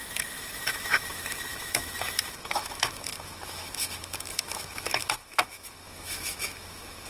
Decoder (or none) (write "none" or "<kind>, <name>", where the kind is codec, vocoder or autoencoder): autoencoder, DAC-VAE